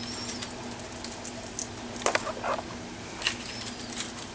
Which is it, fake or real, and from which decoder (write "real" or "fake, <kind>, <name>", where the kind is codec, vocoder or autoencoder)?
real